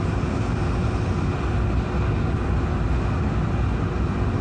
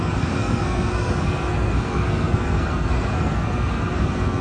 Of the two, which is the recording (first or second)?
first